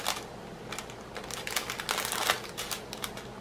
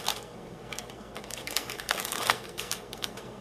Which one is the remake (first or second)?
second